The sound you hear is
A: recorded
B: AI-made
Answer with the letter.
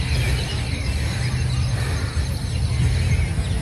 A